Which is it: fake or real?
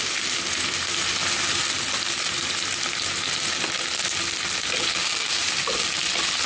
real